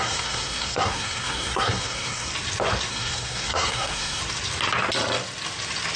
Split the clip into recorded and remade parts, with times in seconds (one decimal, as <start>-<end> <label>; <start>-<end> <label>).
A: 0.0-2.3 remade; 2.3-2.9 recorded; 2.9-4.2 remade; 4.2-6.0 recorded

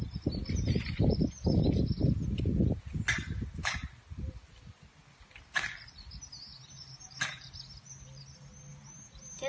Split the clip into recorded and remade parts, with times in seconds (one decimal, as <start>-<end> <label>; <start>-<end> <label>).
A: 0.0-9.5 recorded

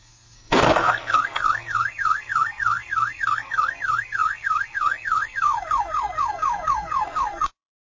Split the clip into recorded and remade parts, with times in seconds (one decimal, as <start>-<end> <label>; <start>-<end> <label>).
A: 0.0-8.0 remade

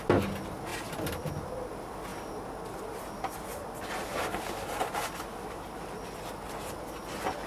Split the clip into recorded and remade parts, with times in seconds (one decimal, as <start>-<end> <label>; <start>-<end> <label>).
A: 0.0-7.5 recorded